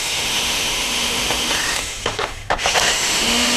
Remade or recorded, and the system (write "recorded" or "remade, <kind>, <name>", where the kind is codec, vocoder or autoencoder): remade, autoencoder, DAC-VAE